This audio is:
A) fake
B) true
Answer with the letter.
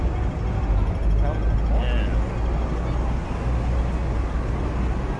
B